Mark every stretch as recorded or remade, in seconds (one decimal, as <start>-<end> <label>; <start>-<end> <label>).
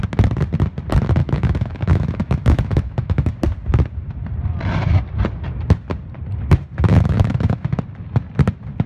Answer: 0.0-1.2 recorded; 1.2-3.3 remade; 3.3-6.9 recorded; 6.9-7.8 remade; 7.8-8.9 recorded